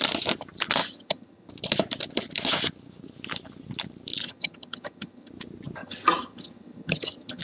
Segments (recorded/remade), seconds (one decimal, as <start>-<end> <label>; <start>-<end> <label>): 0.0-0.8 recorded; 0.8-1.5 remade; 1.5-4.2 recorded; 4.2-5.3 remade; 5.3-5.8 recorded; 5.8-7.4 remade